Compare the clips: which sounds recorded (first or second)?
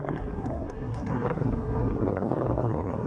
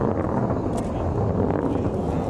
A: second